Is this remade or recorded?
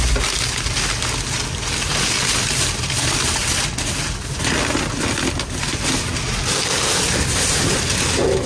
recorded